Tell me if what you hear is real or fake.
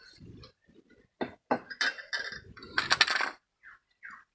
real